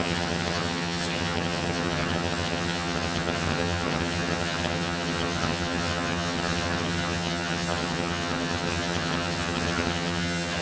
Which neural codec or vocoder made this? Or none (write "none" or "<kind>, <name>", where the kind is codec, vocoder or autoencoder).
vocoder, HiFi-GAN